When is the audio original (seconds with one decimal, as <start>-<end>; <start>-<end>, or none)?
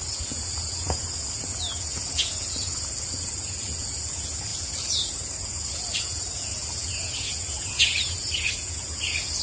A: none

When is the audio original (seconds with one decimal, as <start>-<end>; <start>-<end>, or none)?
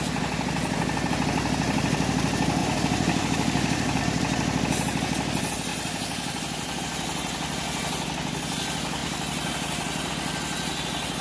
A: 0.0-2.6; 4.0-5.7; 6.8-11.2